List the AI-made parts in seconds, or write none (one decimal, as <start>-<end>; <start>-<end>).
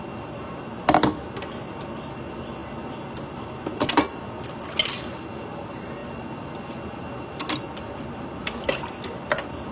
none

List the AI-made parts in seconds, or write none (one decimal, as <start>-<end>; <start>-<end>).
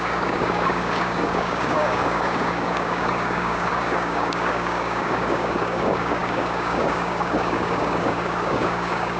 0.0-9.2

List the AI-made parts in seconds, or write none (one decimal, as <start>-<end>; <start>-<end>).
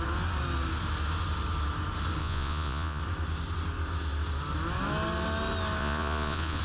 2.2-3.0; 5.8-6.6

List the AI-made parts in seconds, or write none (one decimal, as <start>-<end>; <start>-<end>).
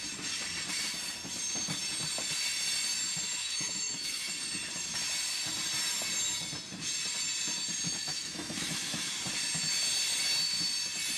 3.4-4.3; 8.1-9.1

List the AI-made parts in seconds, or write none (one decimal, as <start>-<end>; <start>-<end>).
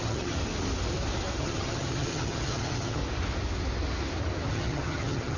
0.0-0.4; 1.4-3.0; 4.5-5.4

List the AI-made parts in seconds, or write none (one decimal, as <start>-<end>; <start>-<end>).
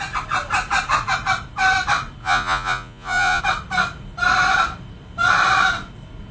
2.2-3.4